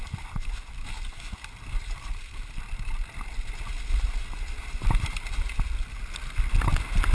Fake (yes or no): no